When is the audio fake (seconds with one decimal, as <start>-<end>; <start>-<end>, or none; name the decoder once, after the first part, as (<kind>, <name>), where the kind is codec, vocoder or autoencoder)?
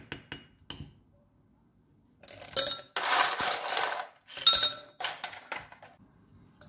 none